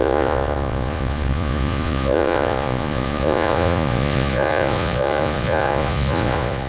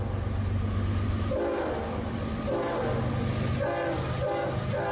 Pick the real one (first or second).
second